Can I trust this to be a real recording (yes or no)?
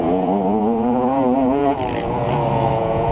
no